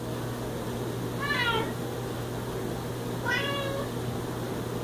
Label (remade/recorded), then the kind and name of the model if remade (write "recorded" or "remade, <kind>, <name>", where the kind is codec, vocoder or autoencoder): recorded